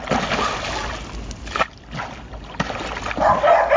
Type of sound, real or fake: real